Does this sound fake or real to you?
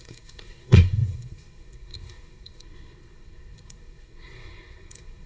fake